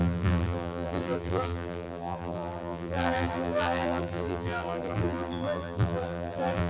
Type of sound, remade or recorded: remade